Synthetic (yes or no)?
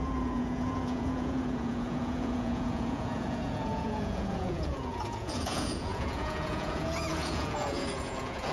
yes